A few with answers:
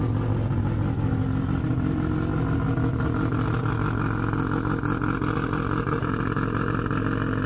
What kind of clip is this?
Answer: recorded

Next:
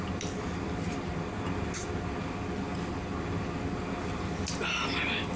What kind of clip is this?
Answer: recorded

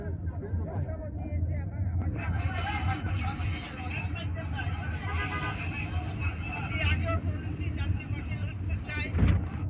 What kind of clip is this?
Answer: recorded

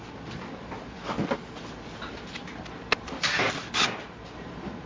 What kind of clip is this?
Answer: recorded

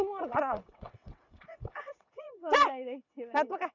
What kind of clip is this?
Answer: remade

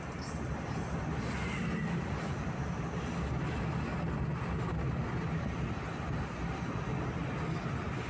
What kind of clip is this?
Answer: recorded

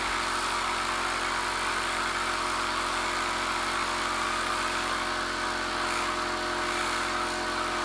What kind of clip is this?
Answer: recorded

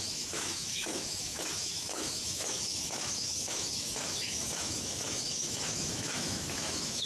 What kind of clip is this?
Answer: remade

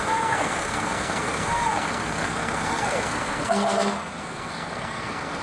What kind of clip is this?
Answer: remade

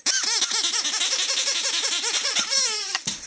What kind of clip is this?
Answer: recorded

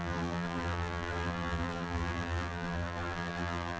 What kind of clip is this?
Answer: remade